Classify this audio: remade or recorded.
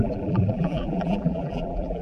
remade